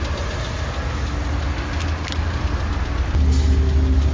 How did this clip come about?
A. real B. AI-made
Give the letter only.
A